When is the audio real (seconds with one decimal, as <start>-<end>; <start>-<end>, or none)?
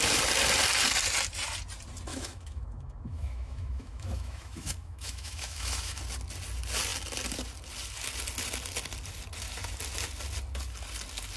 0.0-2.1; 6.0-11.4